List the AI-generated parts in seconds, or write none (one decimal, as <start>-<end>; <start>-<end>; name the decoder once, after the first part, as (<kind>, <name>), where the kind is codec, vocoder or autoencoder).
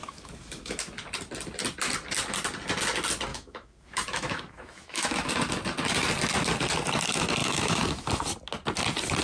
0.0-0.9 (autoencoder, DAC-VAE); 3.3-5.3; 7.4-8.1